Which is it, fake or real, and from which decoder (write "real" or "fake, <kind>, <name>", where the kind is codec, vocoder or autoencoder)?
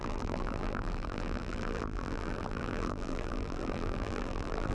fake, vocoder, BigVGAN v2